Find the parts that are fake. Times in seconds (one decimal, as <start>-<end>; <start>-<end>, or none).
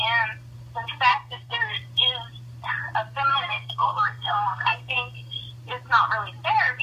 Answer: 1.1-1.7; 3.3-5.4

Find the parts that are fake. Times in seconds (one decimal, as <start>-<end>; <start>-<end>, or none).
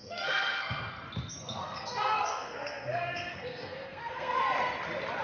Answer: 0.0-0.8; 1.3-4.4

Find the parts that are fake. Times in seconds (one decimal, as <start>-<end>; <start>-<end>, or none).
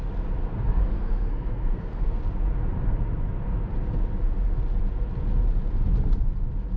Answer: 0.4-2.2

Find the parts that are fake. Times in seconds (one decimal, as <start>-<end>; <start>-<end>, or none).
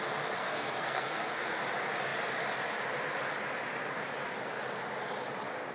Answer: 0.4-1.6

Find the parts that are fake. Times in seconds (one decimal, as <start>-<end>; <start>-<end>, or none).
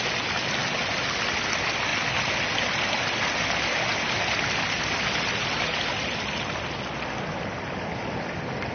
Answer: none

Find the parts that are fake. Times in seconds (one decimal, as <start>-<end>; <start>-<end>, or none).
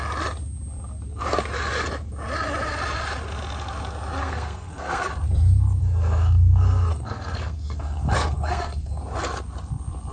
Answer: 4.2-5.1; 5.8-9.0